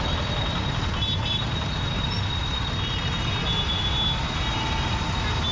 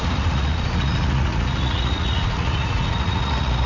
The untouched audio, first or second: first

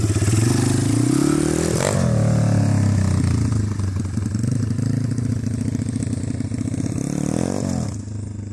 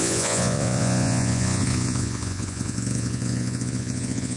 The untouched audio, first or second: first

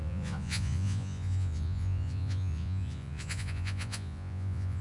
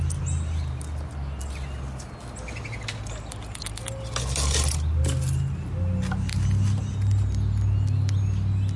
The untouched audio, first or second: second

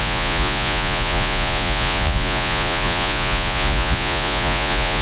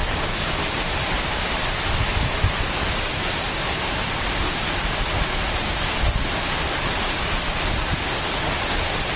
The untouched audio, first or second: second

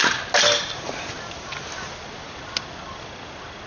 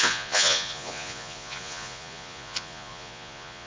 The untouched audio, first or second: first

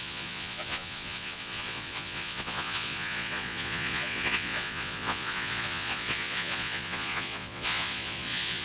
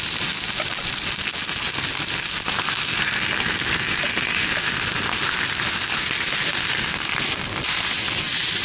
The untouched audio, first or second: second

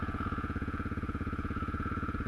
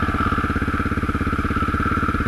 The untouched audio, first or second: second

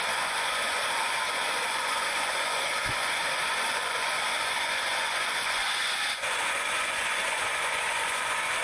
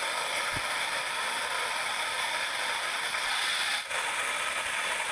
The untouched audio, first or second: second